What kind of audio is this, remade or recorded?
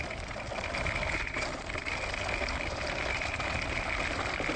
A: recorded